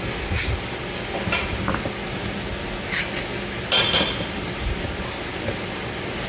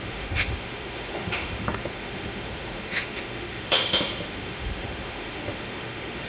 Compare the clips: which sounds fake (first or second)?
second